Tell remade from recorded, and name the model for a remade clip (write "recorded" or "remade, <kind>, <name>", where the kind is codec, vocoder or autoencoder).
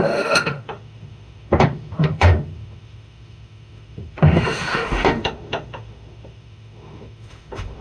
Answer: remade, autoencoder, DAC-VAE